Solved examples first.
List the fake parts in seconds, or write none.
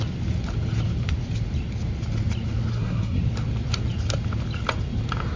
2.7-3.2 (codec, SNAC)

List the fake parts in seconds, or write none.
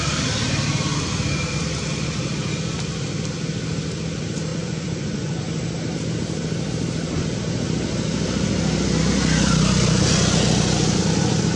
4.5-5.4 (vocoder, Vocos)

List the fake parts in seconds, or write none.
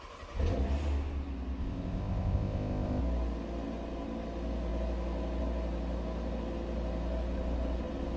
1.6-3.0 (codec, ZipCodec)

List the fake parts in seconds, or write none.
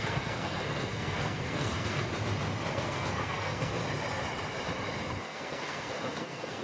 0.0-2.1 (codec, SNAC); 2.7-3.8; 5.2-6.6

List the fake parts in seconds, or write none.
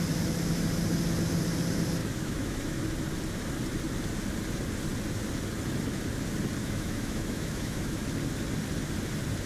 2.0-2.8 (autoencoder, DAC-VAE); 6.6-8.0